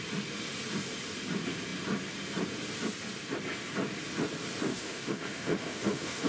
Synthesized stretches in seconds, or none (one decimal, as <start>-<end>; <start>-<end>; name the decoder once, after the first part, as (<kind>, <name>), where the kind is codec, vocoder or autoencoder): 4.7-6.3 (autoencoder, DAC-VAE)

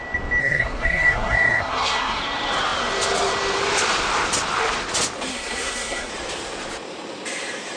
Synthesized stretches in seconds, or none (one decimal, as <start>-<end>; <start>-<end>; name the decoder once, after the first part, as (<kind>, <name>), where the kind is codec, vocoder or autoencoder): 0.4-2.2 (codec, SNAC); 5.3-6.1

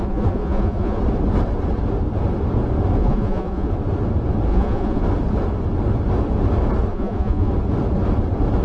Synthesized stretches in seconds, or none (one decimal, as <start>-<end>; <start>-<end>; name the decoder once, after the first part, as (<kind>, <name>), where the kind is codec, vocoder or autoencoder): 0.0-1.0 (vocoder, Vocos); 3.0-3.7; 4.5-5.0; 6.9-7.5